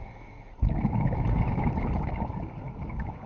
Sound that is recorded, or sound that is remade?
remade